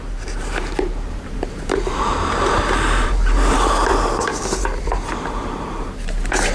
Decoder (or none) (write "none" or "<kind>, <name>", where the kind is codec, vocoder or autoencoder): vocoder, BigVGAN v2